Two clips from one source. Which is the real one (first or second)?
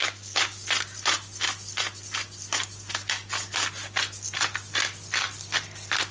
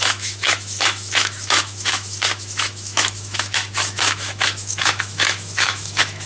first